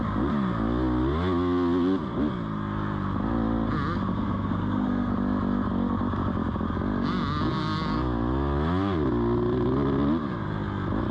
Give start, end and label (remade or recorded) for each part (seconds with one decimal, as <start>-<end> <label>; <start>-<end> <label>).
0.0-4.1 recorded; 4.1-5.1 remade; 5.1-11.1 recorded